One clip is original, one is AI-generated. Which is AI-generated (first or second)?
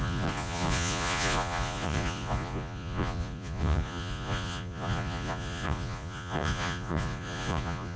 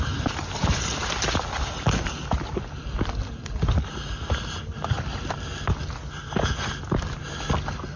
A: first